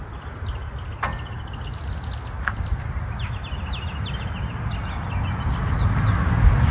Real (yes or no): yes